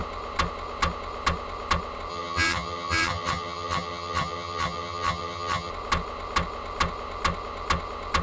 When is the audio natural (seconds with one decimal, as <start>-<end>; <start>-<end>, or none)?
0.0-2.1; 5.7-8.2